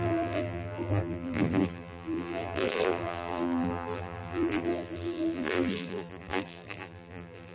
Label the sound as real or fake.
fake